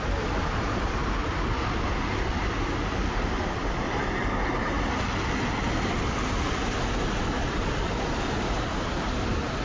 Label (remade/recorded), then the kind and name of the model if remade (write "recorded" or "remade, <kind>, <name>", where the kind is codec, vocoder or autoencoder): recorded